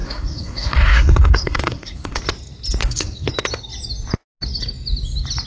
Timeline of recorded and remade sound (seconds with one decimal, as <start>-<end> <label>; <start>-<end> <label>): 0.0-2.2 remade; 2.2-2.8 recorded; 2.8-3.3 remade; 3.3-5.5 recorded